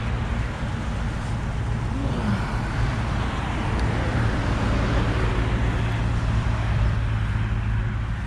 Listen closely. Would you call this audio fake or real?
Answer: real